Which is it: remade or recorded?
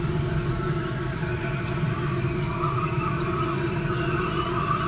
recorded